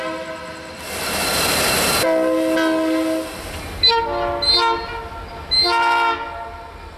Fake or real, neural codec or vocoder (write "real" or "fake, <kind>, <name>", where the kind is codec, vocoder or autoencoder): real